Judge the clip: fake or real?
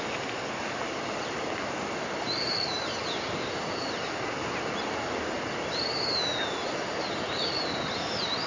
real